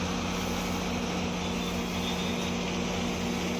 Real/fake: real